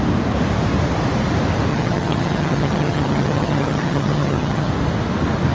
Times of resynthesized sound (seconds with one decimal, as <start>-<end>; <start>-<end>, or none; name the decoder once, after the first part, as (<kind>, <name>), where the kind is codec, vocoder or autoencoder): 1.7-4.7 (vocoder, HiFi-GAN)